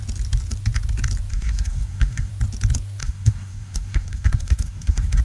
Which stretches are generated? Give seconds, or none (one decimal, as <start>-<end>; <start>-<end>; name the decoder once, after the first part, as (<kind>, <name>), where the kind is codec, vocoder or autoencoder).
1.3-2.3 (codec, SNAC); 3.0-5.2